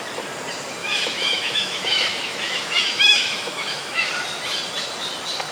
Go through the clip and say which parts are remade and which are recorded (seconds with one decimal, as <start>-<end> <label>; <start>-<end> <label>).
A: 0.0-0.8 recorded; 0.8-4.1 remade; 4.1-5.5 recorded